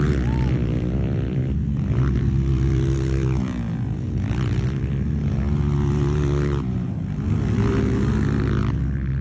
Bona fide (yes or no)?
yes